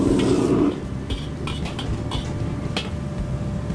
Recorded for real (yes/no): yes